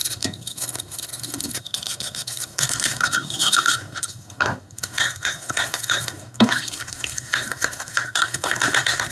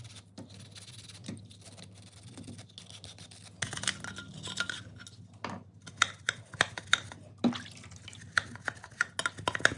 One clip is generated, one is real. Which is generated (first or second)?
first